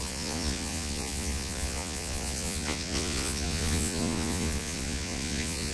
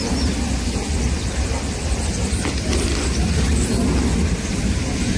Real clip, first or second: second